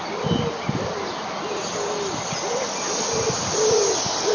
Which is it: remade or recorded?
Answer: recorded